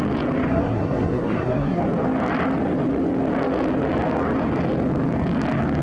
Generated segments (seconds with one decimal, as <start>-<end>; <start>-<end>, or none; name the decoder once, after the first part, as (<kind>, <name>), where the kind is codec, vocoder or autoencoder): 0.5-1.8 (codec, SNAC)